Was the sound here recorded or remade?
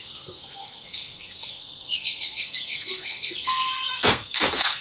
remade